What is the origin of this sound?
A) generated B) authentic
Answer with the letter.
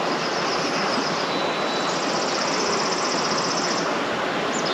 B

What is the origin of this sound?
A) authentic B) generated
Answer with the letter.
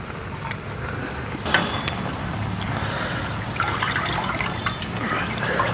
B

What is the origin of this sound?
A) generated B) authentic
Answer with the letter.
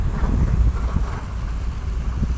B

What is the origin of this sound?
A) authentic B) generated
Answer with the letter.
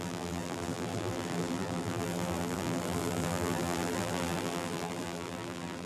B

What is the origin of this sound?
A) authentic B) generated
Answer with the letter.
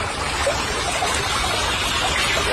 A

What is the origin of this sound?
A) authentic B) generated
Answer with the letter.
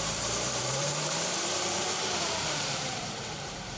B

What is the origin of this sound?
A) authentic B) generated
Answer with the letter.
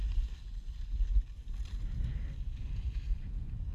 A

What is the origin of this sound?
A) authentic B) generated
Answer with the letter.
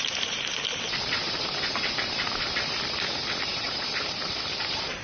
B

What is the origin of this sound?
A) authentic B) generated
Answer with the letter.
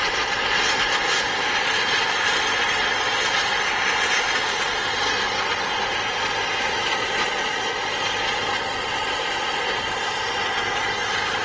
A